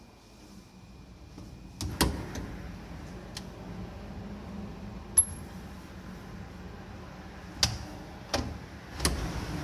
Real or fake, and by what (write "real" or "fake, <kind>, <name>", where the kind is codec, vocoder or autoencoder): real